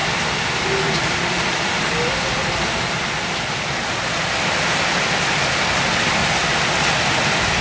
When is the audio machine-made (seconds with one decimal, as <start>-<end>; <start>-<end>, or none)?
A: 0.0-6.2; 7.0-7.6